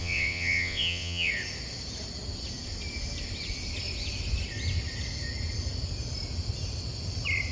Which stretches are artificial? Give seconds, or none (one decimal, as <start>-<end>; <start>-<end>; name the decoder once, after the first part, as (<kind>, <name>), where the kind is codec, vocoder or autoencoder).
0.0-1.3 (vocoder, WaveNeXt)